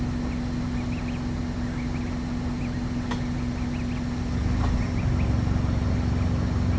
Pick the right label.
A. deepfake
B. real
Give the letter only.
B